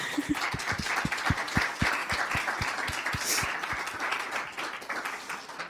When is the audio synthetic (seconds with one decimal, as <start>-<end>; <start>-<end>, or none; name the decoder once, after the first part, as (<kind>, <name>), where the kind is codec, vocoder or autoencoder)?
4.1-4.8 (vocoder, BigVGAN v2)